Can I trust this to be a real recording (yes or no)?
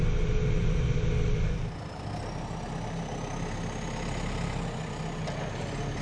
yes